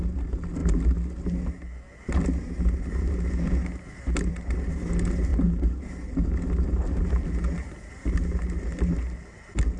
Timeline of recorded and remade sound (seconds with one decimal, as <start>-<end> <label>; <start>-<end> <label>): 0.0-9.8 recorded

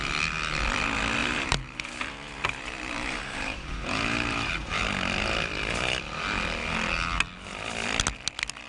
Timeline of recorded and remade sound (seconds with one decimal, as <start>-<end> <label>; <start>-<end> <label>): 0.0-1.2 recorded; 1.2-4.8 remade; 4.8-8.7 recorded

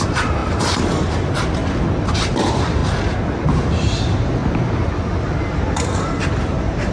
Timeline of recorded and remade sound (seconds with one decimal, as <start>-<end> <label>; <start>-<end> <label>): 0.0-1.6 remade; 1.6-2.1 recorded; 2.1-2.8 remade; 2.8-3.7 recorded; 3.7-4.4 remade; 4.4-6.4 recorded; 6.4-6.9 remade

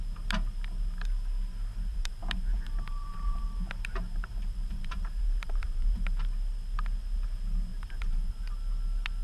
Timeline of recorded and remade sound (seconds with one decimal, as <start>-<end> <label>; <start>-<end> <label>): 0.0-1.9 recorded; 1.9-6.2 remade; 6.2-7.7 recorded; 7.7-8.3 remade; 8.3-9.2 recorded